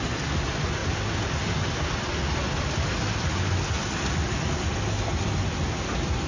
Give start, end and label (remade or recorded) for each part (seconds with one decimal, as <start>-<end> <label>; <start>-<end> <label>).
0.0-6.3 recorded